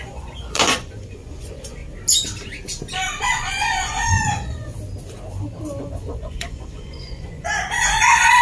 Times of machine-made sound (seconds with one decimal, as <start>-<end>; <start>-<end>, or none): 0.0-1.8; 3.2-4.7; 5.8-8.4